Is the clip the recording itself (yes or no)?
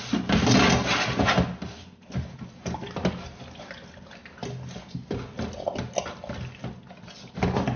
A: yes